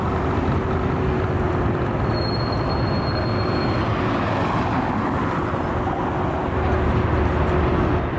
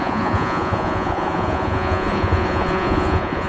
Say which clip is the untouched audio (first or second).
first